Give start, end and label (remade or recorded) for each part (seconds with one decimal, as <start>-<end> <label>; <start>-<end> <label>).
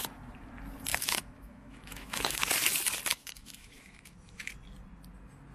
0.0-0.9 recorded; 0.9-2.4 remade; 2.4-3.1 recorded; 3.1-4.5 remade; 4.5-5.5 recorded